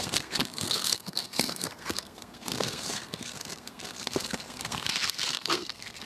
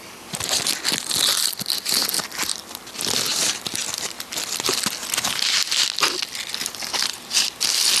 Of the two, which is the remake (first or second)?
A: first